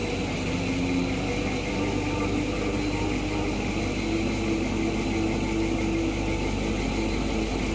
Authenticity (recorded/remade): recorded